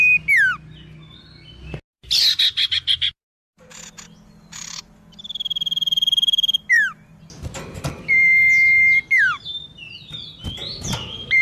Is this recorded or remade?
recorded